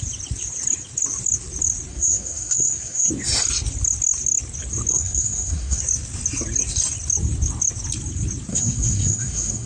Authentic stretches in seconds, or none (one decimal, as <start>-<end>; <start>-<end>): 0.0-1.9; 3.1-4.9; 5.8-8.5